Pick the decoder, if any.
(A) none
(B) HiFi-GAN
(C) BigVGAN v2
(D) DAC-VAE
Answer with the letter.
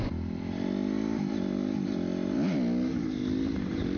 A